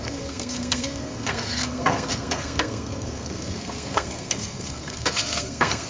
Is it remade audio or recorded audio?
remade